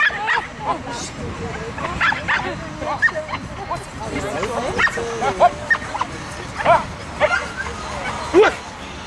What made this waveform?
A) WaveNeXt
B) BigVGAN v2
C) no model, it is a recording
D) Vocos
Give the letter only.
C